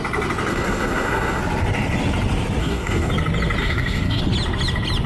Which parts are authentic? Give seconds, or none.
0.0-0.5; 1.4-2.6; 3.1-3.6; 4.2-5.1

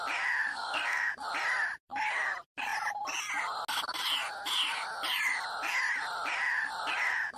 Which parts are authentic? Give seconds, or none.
0.0-0.5; 1.1-7.4